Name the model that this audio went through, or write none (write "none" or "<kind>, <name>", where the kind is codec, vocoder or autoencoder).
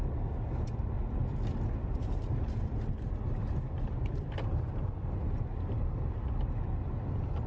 none